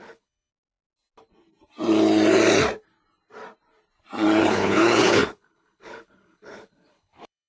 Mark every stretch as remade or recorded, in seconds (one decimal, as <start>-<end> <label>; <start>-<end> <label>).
0.0-0.5 remade; 0.5-4.4 recorded; 4.4-7.5 remade